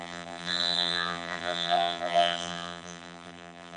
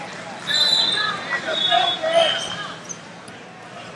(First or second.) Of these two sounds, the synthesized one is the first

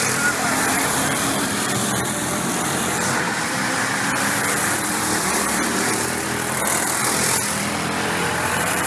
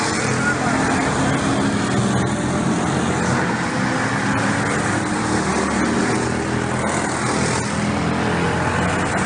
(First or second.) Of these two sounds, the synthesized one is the first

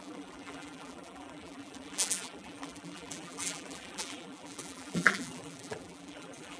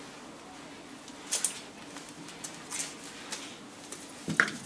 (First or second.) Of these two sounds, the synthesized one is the first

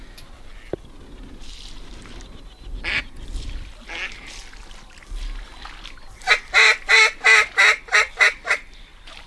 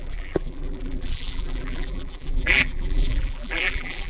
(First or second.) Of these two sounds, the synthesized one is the second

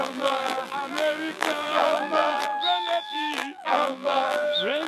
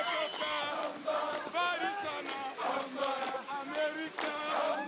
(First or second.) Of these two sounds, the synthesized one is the first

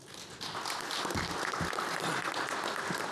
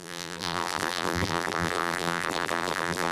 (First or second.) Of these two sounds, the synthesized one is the second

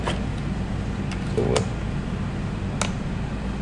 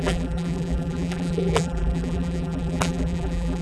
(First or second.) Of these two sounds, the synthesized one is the second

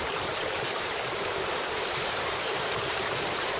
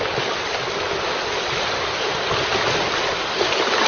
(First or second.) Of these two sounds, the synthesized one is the first